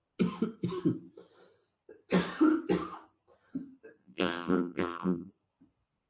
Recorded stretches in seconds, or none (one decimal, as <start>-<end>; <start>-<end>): 0.0-4.0; 5.3-6.1